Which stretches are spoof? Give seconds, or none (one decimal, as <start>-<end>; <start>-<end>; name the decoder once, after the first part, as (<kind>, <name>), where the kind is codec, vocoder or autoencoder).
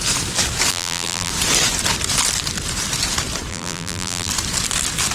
0.7-1.3 (vocoder, BigVGAN v2); 3.5-4.3